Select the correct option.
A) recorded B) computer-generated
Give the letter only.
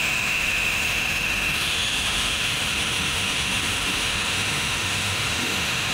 B